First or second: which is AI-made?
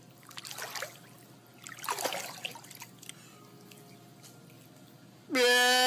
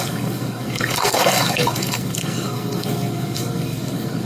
second